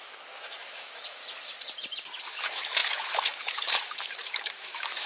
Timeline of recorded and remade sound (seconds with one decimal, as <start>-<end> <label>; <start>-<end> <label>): 0.0-1.2 remade; 1.2-2.2 recorded; 2.2-5.1 remade